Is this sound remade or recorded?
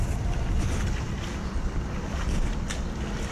recorded